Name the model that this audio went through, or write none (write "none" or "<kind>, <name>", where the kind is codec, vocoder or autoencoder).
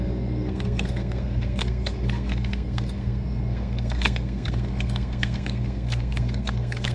codec, SNAC